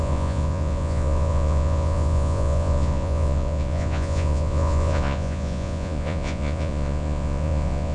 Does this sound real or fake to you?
fake